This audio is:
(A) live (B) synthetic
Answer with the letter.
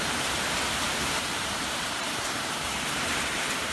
B